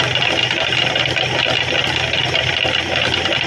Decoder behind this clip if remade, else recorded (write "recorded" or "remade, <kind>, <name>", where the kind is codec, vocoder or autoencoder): recorded